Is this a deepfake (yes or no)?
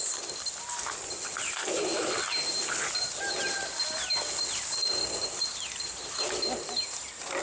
no